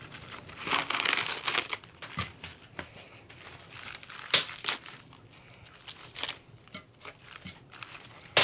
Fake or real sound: real